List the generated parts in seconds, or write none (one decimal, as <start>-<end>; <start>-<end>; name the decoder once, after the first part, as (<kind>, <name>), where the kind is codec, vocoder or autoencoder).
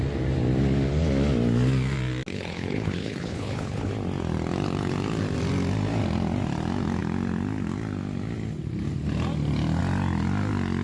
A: 2.3-3.9 (codec, HILCodec)